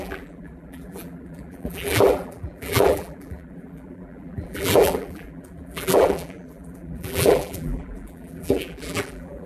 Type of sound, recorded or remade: remade